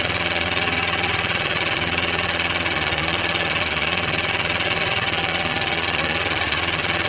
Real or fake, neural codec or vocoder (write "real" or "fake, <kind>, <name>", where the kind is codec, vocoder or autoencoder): fake, vocoder, Vocos